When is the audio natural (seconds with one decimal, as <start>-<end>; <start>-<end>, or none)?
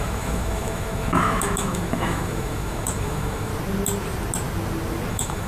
3.5-5.1